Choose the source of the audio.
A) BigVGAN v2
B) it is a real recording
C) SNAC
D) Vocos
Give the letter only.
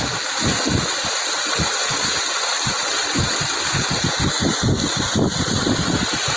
B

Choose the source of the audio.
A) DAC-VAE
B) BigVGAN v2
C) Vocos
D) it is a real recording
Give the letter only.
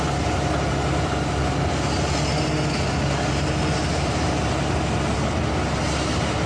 D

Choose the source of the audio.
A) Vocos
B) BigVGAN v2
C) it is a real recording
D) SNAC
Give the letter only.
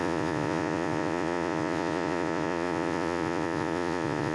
A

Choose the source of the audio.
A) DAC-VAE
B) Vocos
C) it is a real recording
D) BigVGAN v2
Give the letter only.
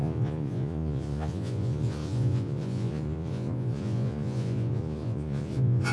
B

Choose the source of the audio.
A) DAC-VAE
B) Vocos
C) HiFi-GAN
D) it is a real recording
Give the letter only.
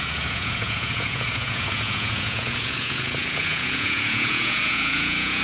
B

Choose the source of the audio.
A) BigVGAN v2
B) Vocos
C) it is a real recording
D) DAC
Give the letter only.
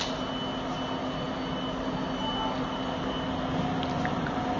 C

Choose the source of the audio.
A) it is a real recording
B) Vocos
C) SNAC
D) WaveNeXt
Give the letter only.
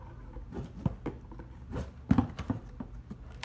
A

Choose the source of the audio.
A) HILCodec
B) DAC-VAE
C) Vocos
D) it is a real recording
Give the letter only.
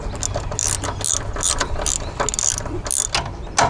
D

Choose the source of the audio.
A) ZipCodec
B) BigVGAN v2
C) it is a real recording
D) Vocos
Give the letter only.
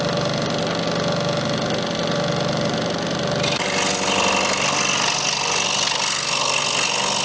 C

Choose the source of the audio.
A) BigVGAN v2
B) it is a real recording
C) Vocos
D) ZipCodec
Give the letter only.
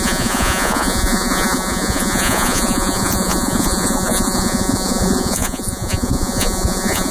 C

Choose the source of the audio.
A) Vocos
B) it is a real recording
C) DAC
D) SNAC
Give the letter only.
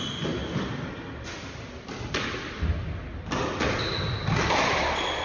B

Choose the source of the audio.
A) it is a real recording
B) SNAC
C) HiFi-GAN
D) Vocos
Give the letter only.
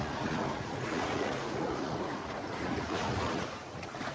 D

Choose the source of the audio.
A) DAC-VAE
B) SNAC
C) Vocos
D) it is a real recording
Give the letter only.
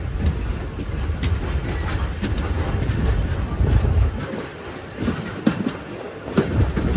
D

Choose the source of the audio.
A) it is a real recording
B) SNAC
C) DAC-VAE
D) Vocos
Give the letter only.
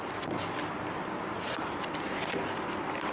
A